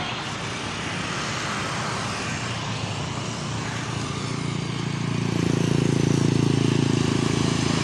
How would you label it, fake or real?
real